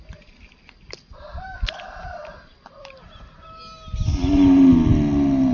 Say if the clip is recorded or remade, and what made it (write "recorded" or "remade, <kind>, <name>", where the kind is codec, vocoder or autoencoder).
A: recorded